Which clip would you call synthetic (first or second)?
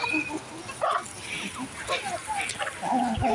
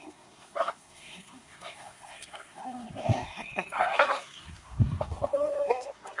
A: second